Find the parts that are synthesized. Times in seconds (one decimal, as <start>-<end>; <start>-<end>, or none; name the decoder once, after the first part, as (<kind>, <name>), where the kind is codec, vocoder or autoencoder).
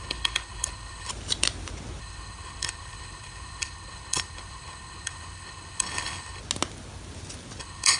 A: 0.0-1.1 (codec, HILCodec); 2.0-6.4; 7.6-8.0